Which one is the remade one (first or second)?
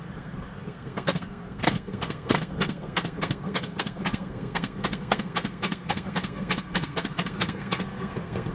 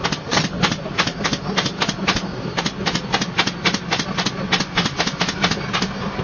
first